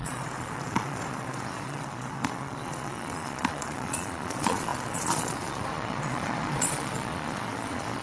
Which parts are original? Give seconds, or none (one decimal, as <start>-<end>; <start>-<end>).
none